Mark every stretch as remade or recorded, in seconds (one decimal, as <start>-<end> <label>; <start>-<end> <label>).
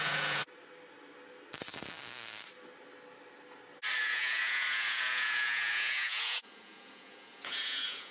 0.0-0.4 remade; 0.4-4.0 recorded; 4.0-8.1 remade